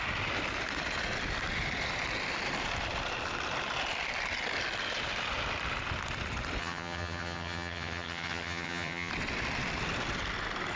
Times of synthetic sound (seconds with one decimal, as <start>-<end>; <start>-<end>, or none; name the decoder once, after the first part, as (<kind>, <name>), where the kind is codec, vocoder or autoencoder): 6.6-9.1 (vocoder, HiFi-GAN)